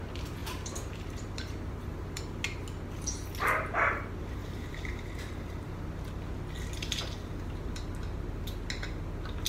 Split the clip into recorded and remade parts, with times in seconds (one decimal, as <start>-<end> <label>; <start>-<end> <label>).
0.0-0.4 recorded; 0.4-2.2 remade; 2.2-4.4 recorded; 4.4-6.0 remade; 6.0-7.2 recorded; 7.2-7.8 remade; 7.8-9.5 recorded